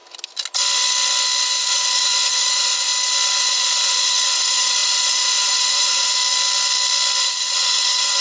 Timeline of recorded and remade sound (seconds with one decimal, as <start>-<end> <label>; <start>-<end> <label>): 0.0-1.6 recorded; 1.6-2.9 remade; 2.9-3.4 recorded; 3.4-6.2 remade; 6.2-7.2 recorded; 7.2-8.2 remade